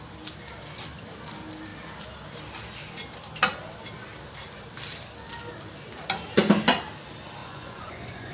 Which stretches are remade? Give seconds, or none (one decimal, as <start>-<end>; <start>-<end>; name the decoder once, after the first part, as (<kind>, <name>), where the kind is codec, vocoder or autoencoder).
7.4-8.3 (vocoder, Vocos)